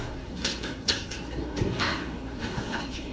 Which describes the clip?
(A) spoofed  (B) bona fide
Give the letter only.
A